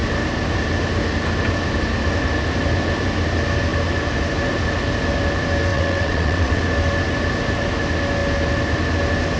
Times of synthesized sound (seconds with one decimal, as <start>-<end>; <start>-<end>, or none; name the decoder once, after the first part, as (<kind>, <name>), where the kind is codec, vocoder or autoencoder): 5.7-6.6 (vocoder, WaveNeXt)